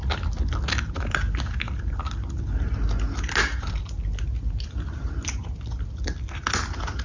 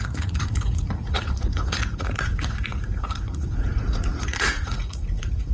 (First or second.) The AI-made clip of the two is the second